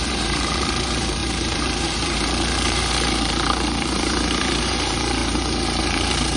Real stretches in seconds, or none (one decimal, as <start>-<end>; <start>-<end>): none